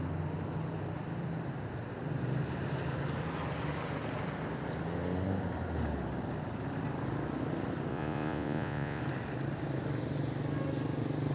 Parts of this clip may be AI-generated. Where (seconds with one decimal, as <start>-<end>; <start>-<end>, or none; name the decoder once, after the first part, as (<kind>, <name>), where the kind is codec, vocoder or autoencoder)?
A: 7.9-9.0 (vocoder, Vocos)